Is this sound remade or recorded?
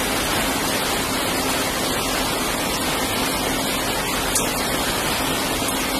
recorded